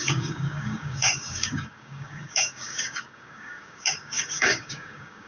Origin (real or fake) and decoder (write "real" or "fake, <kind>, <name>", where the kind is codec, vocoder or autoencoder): fake, codec, DAC